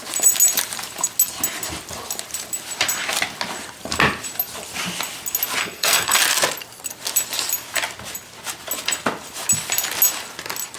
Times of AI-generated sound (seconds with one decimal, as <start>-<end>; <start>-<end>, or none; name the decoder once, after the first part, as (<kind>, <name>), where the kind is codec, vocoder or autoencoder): 5.6-6.2 (codec, SNAC)